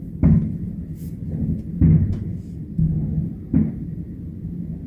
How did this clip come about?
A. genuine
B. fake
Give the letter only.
A